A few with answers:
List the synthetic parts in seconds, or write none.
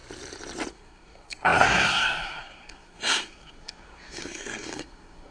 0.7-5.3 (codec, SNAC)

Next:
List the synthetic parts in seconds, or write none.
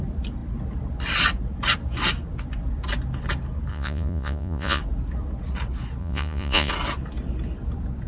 3.7-4.8 (vocoder, Vocos); 6.0-6.7